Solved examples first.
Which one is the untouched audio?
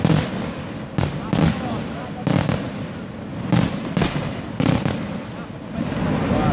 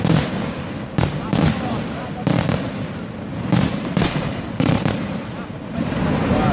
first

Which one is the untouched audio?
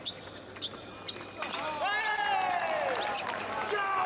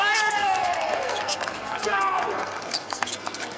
first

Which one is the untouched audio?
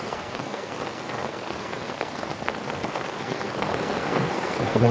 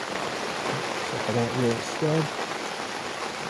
second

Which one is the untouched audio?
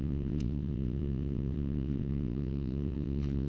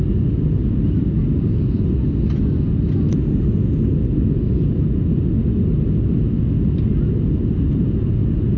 second